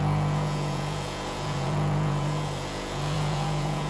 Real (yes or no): no